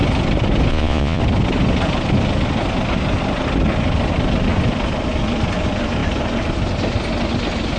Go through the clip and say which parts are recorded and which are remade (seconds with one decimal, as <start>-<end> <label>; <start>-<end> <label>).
0.0-0.7 recorded; 0.7-1.2 remade; 1.2-7.8 recorded